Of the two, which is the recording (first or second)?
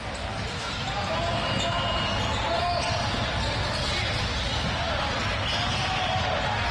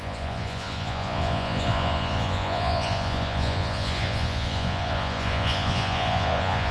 first